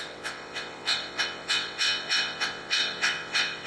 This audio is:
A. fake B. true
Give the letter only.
A